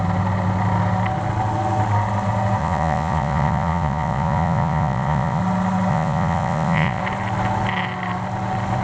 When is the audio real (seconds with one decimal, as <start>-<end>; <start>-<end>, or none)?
0.0-2.6; 5.4-5.9; 7.0-8.8